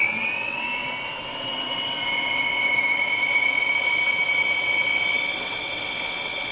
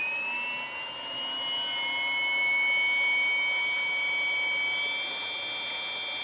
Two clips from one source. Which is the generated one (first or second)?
first